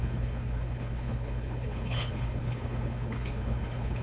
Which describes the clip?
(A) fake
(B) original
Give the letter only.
A